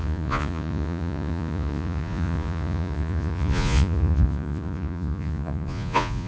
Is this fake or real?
fake